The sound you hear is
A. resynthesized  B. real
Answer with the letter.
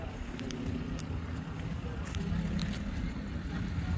B